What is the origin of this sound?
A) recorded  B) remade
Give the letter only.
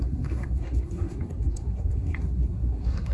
B